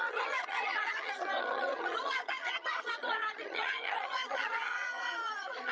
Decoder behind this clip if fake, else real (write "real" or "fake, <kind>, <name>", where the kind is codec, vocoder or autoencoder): fake, vocoder, HiFi-GAN